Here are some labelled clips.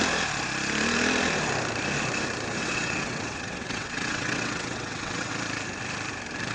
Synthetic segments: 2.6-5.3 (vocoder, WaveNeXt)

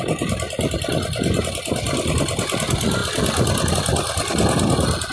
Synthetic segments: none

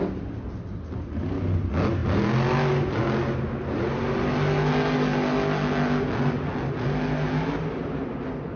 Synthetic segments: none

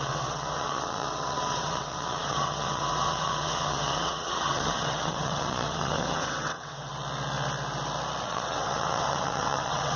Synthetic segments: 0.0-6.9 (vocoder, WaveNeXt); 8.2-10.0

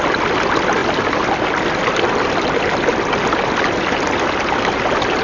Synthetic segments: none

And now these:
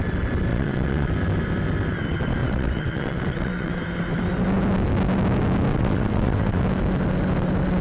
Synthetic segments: 0.5-1.1 (vocoder, WaveNeXt); 2.4-3.7; 5.7-6.6

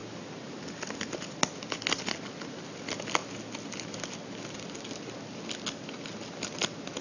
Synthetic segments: none

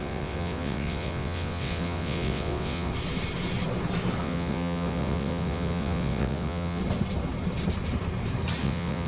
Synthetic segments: 0.0-2.9 (vocoder, WaveNeXt); 4.2-6.8; 8.6-9.1